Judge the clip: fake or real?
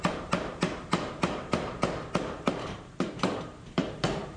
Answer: fake